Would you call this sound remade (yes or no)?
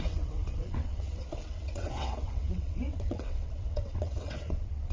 yes